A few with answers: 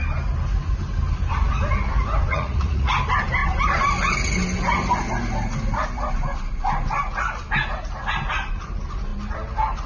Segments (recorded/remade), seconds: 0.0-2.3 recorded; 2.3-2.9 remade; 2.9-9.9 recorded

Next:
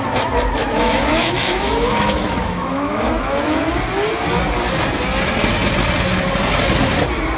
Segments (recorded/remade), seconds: 0.0-0.6 recorded; 0.6-3.6 remade; 3.6-7.4 recorded

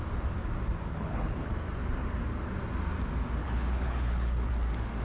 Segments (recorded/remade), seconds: 0.0-0.9 recorded; 0.9-1.5 remade; 1.5-3.4 recorded; 3.4-4.5 remade; 4.5-5.0 recorded